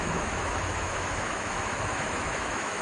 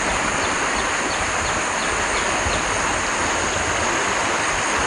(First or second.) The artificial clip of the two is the first